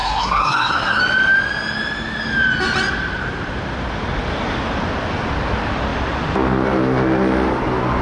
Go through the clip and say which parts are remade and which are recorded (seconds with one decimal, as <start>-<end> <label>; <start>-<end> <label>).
0.0-1.0 remade; 1.0-8.0 recorded